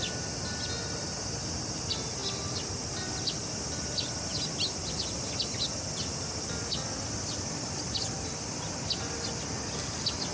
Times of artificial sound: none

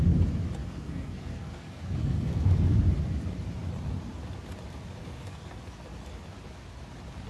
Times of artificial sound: 0.6-2.8; 5.0-5.5

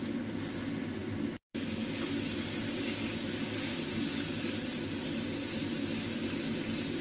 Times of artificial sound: none

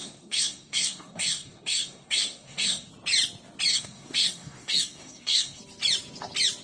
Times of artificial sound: 0.0-2.9; 3.7-5.6

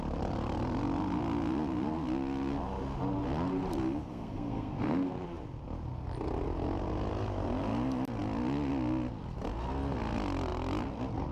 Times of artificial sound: 4.1-5.1

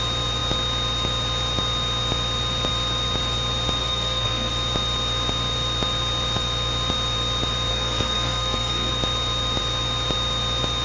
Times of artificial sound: 3.8-4.5; 7.7-8.9

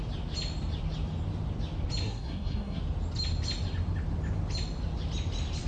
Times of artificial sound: 2.0-2.8